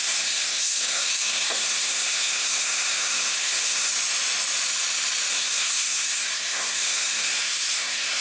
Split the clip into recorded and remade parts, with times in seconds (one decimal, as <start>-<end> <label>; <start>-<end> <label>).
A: 0.0-3.9 remade; 3.9-5.3 recorded; 5.3-8.2 remade